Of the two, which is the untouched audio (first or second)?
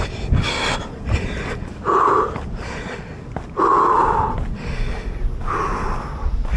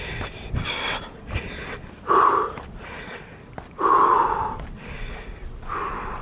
first